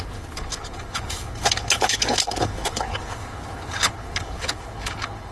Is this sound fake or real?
fake